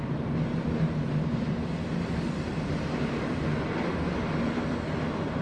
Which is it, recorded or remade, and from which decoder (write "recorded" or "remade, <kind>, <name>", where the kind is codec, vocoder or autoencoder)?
recorded